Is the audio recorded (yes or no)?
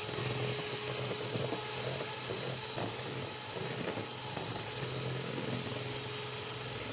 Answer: yes